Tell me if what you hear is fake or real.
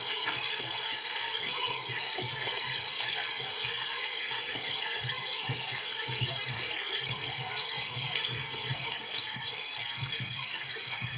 fake